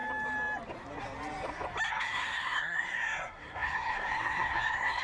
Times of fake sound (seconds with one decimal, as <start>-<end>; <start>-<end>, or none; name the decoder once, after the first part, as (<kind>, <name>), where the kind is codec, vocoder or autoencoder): 1.9-5.0 (codec, SNAC)

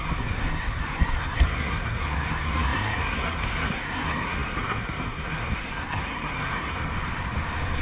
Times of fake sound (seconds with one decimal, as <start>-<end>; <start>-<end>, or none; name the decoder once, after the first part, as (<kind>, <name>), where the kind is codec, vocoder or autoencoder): 0.0-6.9 (codec, SNAC)

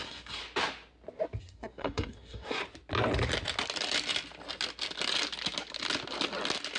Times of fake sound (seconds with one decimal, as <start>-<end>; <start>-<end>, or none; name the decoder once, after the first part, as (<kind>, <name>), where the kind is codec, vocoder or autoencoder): 0.0-0.4 (codec, SNAC); 1.4-2.6

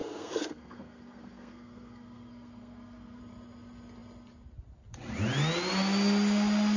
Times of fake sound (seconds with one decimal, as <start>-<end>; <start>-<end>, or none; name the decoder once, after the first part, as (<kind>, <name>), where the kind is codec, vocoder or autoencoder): 0.0-3.2 (codec, SNAC)